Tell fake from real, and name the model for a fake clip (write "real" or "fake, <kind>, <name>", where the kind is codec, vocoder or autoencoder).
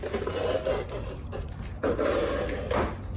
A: real